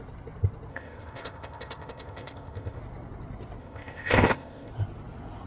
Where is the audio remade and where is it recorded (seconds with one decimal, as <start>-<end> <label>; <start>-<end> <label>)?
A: 0.0-0.7 recorded; 0.7-2.8 remade; 2.8-3.6 recorded; 3.6-4.7 remade; 4.7-5.5 recorded